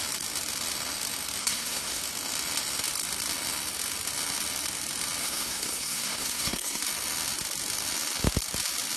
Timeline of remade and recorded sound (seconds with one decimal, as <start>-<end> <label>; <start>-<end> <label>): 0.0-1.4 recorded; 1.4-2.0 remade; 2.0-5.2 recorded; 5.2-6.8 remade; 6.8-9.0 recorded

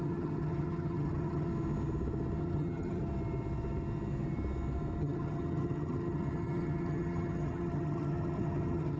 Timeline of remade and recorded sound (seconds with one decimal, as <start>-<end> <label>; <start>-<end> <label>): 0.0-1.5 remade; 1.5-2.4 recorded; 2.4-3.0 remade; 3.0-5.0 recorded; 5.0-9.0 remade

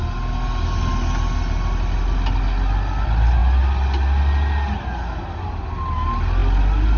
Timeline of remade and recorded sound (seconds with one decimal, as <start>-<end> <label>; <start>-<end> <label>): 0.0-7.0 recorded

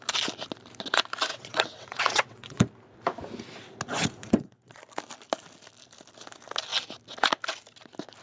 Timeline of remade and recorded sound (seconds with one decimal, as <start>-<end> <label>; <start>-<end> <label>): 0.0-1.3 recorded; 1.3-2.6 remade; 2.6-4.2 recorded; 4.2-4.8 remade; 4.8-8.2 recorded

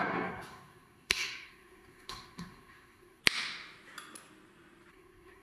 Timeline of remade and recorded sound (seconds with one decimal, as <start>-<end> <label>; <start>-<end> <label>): 0.0-3.2 remade; 3.2-4.9 recorded; 4.9-5.4 remade

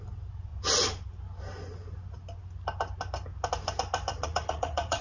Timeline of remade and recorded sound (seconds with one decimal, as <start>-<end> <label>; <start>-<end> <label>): 0.0-4.1 recorded; 4.1-5.0 remade